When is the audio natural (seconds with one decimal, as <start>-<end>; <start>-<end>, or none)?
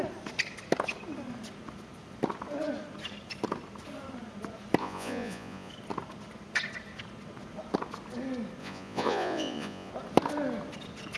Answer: 0.0-4.8; 5.7-8.6; 9.9-11.2